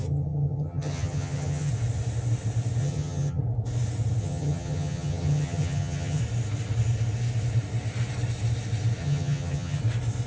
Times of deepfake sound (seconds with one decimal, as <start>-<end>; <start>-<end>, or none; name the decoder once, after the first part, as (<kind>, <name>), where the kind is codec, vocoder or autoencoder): 0.0-1.7 (vocoder, HiFi-GAN); 2.8-3.4; 4.2-6.2; 9.0-9.8